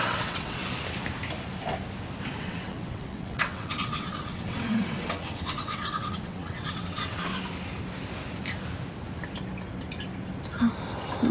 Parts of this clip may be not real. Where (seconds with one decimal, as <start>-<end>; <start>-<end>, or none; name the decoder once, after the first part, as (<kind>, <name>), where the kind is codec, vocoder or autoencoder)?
0.0-0.6 (vocoder, WaveNeXt); 2.4-7.3